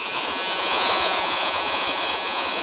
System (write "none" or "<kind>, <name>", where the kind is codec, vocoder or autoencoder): vocoder, Vocos